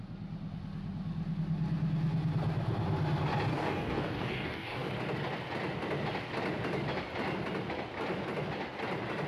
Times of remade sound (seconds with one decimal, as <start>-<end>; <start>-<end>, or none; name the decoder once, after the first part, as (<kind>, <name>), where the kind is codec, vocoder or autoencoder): 3.5-4.9 (codec, DAC)